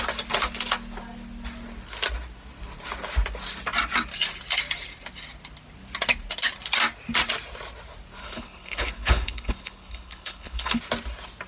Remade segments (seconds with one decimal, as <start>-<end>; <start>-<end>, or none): 8.2-10.8